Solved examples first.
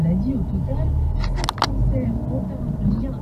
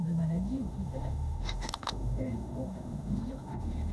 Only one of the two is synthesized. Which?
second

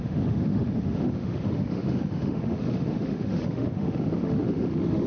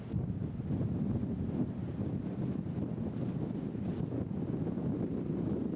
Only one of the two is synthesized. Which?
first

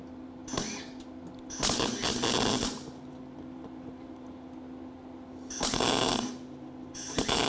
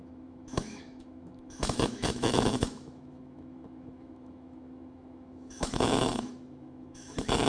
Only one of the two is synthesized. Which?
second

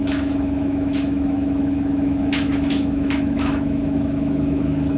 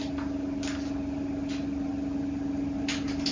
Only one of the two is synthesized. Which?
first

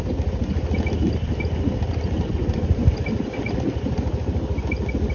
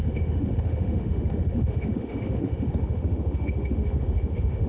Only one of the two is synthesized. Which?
second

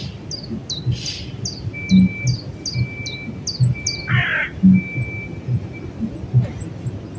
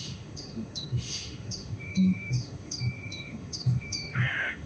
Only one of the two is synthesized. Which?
second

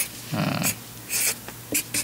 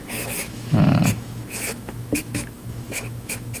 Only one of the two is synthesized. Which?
second